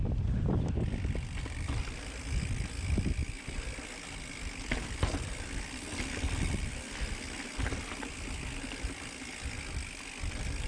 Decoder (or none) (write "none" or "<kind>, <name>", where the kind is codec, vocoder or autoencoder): none